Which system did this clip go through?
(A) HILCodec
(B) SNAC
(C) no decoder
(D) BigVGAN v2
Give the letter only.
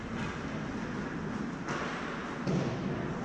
C